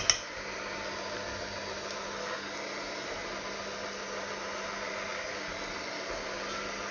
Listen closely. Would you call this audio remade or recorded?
recorded